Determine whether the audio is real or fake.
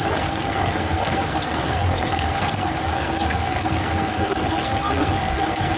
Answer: fake